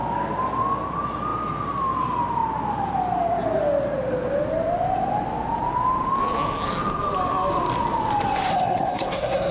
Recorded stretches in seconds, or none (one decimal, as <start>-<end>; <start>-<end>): 0.0-8.5